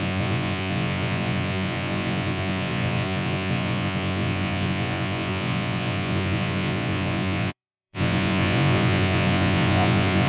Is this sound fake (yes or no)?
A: yes